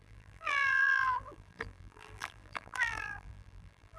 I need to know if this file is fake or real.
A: fake